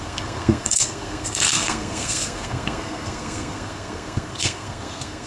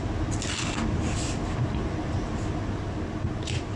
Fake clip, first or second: first